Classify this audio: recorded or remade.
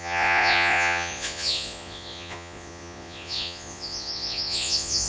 remade